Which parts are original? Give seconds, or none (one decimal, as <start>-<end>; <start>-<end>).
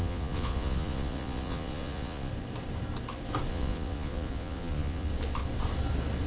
2.3-3.5; 5.1-6.3